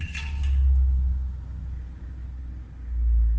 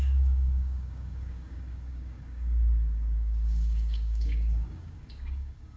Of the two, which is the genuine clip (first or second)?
first